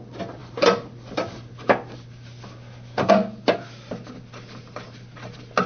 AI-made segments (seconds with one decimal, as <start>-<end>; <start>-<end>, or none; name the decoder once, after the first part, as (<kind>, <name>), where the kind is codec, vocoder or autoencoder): none